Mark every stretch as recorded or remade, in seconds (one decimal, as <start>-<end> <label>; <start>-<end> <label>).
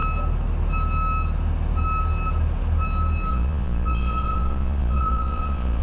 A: 0.0-3.3 recorded; 3.3-5.8 remade